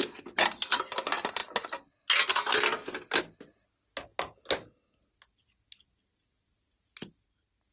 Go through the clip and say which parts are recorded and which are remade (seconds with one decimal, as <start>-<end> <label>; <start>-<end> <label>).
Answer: 0.0-7.7 recorded